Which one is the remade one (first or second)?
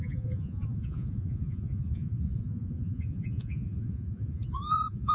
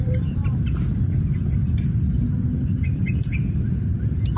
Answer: first